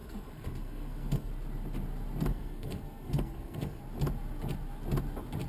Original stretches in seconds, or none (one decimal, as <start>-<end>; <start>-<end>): 1.3-2.3; 3.8-5.5

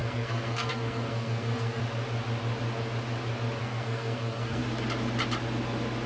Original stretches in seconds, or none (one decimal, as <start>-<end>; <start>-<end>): 1.8-3.6; 4.6-6.1